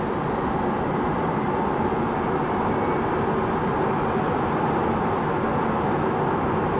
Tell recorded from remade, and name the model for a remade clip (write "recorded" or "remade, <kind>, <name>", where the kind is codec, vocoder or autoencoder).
recorded